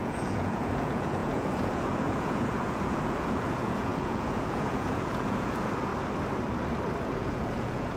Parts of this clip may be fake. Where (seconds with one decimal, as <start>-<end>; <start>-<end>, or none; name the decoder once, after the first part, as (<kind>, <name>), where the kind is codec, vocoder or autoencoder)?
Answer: 0.0-5.9 (vocoder, Vocos); 7.0-8.0